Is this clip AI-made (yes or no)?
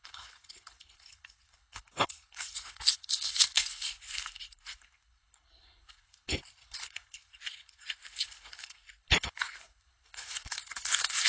yes